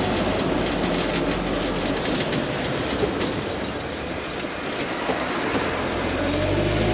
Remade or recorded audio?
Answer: recorded